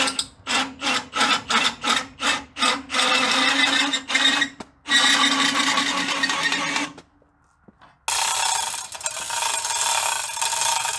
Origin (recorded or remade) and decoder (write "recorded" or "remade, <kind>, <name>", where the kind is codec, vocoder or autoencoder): recorded